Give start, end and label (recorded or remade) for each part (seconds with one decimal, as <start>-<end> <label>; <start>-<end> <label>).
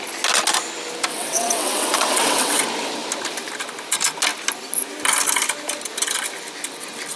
0.0-1.1 recorded; 1.1-2.6 remade; 2.6-7.2 recorded